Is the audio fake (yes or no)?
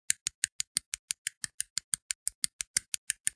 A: no